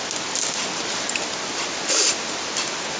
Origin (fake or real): real